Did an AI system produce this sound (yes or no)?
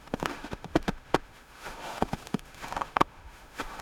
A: yes